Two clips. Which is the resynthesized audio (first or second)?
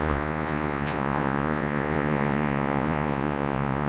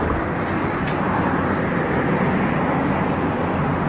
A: first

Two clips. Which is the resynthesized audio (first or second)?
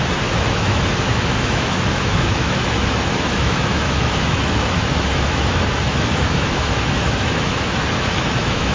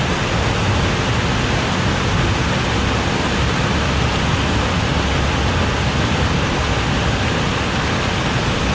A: first